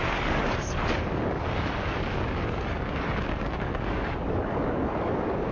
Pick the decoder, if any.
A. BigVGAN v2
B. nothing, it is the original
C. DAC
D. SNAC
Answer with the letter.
C